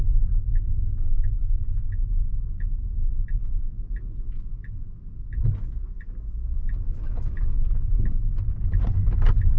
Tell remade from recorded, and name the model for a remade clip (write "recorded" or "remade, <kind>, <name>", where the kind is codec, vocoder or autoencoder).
recorded